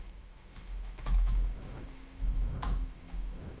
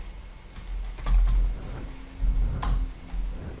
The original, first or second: second